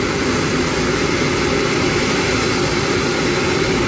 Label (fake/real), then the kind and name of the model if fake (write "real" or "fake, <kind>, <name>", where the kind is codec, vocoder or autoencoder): real